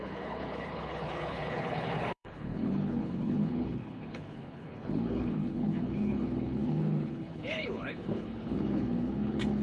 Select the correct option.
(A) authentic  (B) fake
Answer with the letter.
B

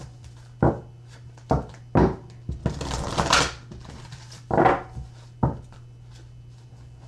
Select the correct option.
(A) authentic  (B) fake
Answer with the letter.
A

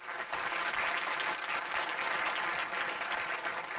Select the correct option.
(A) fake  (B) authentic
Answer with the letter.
B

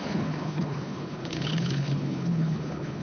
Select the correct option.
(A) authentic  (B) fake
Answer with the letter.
B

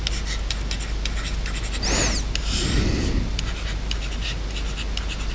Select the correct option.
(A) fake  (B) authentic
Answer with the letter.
B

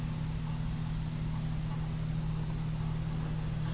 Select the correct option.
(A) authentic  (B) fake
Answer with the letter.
A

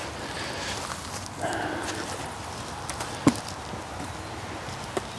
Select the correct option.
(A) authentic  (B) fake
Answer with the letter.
A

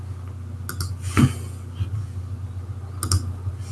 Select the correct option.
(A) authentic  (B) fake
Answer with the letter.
A